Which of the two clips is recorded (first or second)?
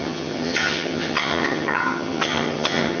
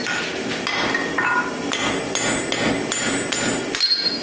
second